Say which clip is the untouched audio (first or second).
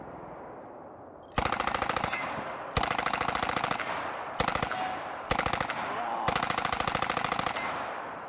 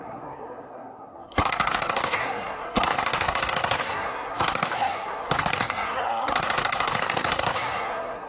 first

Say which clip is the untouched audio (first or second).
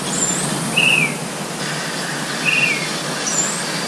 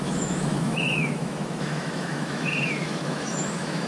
first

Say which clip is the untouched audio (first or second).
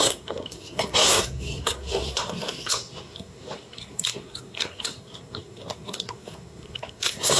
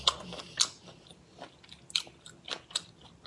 second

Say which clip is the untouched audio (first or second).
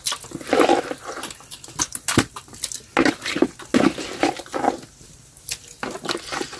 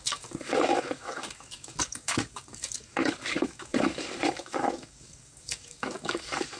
first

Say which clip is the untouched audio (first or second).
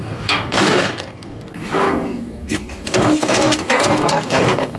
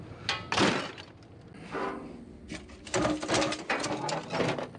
second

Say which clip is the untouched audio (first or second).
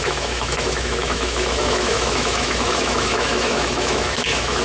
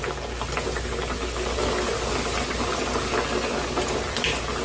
second